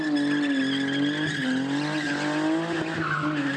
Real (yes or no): yes